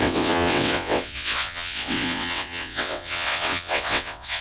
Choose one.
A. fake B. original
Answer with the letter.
A